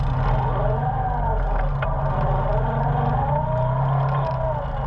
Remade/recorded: recorded